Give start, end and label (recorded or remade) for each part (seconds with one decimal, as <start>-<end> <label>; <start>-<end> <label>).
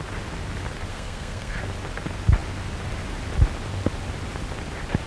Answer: 0.0-0.9 recorded; 0.9-1.6 remade; 1.6-5.1 recorded